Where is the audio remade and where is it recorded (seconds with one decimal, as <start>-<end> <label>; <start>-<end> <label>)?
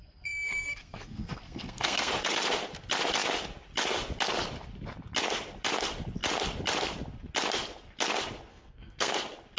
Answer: 0.0-2.1 remade; 2.1-8.5 recorded; 8.5-9.1 remade; 9.1-9.6 recorded